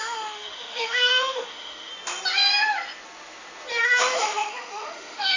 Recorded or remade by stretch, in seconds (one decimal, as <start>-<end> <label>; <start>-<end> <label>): 0.0-1.9 remade; 1.9-3.8 recorded; 3.8-5.4 remade